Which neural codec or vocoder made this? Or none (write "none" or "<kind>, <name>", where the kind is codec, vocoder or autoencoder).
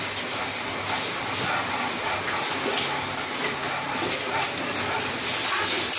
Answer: none